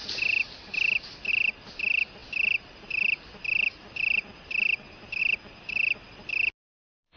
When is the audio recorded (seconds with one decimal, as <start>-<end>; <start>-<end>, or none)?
0.0-7.2